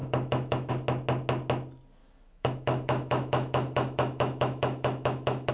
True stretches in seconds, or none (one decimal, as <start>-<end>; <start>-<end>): 0.7-2.0